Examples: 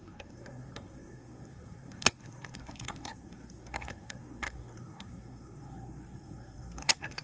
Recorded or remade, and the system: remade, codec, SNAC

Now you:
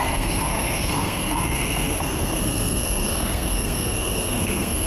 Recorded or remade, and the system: remade, codec, SNAC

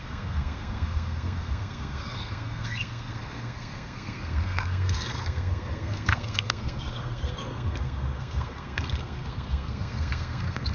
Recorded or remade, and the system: remade, codec, SNAC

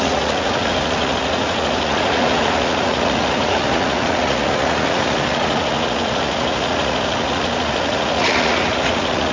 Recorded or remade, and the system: remade, vocoder, Vocos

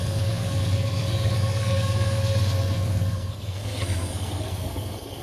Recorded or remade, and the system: remade, codec, SNAC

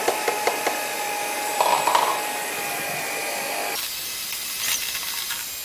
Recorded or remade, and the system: remade, vocoder, BigVGAN v2